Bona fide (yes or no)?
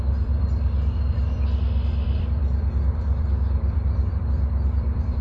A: no